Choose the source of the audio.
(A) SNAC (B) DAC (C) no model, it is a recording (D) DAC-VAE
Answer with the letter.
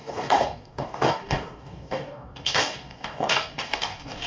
B